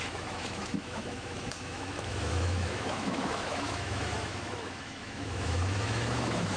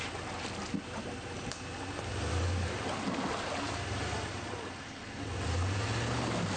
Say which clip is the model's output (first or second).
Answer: first